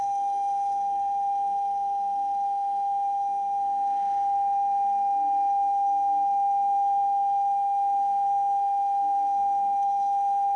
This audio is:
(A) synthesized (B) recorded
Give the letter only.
A